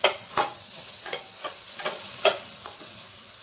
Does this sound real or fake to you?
fake